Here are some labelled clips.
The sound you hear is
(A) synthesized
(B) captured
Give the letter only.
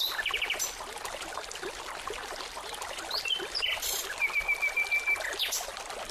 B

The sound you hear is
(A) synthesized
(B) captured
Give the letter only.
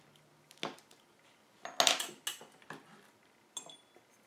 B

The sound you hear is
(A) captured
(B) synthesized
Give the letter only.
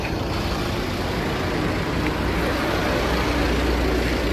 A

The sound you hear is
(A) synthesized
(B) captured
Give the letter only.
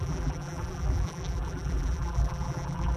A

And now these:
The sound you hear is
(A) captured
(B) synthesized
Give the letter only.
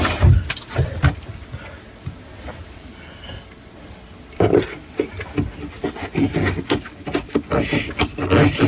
A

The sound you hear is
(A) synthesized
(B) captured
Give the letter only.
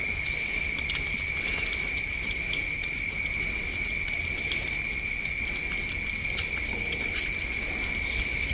B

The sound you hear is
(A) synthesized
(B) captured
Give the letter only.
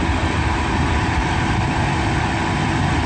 B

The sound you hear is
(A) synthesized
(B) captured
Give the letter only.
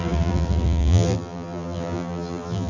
A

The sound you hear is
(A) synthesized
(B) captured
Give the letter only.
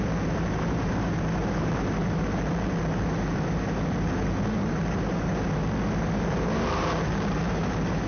A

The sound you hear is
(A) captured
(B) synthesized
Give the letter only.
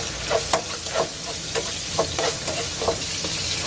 B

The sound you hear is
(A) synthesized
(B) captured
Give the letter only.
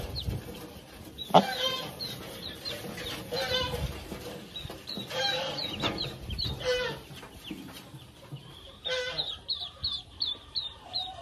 A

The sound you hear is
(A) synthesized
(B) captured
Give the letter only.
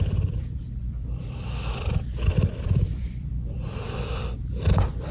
A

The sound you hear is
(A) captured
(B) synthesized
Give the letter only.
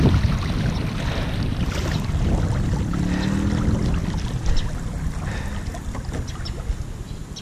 A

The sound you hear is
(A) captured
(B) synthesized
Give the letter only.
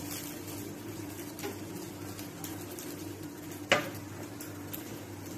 A